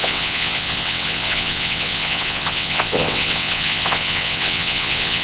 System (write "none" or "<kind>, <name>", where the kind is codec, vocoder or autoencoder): vocoder, WaveNeXt